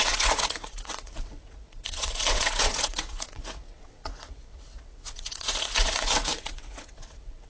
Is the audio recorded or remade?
remade